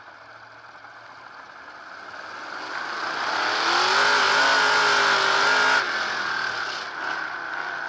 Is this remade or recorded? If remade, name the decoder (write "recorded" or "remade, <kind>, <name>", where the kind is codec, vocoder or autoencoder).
recorded